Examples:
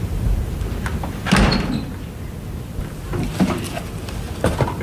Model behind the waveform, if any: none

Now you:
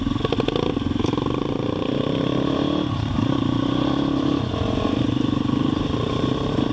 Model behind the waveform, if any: none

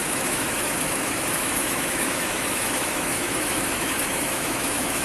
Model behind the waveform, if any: autoencoder, DAC-VAE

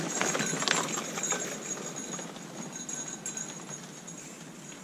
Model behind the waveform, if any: none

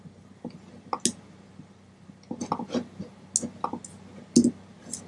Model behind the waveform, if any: none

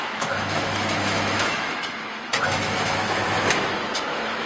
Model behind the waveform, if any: autoencoder, DAC-VAE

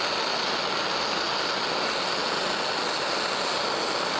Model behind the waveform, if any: none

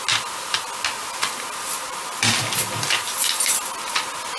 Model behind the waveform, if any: none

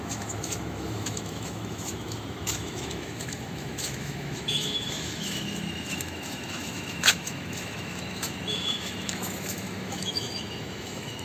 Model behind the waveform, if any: autoencoder, DAC-VAE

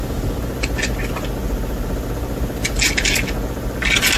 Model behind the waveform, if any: none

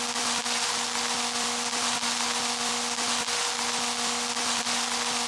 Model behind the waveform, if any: none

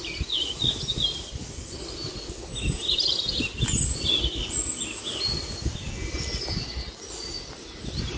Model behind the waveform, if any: none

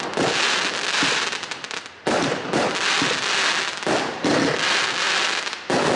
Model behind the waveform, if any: none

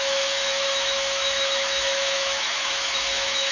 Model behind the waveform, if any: autoencoder, DAC-VAE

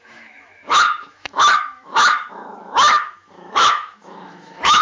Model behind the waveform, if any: autoencoder, DAC-VAE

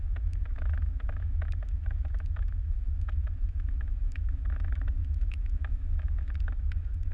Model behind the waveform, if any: autoencoder, DAC-VAE